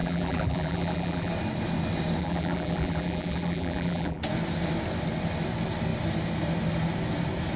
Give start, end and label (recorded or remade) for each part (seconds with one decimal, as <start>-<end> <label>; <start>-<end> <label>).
0.0-1.3 remade; 1.3-2.2 recorded; 2.2-4.2 remade; 4.2-7.6 recorded